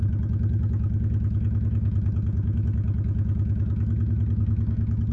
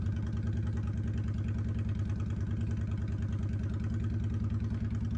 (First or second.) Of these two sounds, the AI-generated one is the first